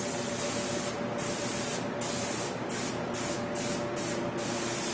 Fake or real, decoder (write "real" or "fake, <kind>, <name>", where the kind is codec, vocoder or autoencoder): real